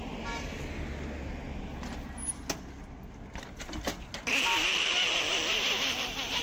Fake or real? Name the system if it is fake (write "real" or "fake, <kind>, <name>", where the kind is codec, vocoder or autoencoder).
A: real